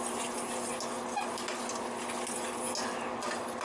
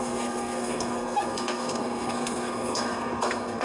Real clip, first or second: first